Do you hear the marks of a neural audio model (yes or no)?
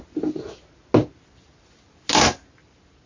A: no